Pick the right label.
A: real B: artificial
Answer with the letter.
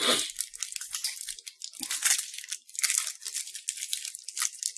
A